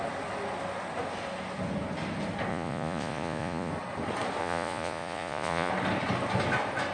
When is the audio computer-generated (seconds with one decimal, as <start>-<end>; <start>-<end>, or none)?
2.5-3.7; 4.4-5.7

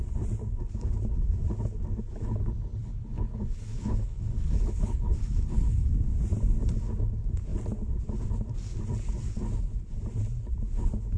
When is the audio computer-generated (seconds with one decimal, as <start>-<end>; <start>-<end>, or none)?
2.8-5.9

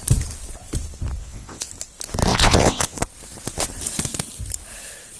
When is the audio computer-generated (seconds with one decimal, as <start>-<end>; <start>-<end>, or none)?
1.2-1.7; 2.3-3.0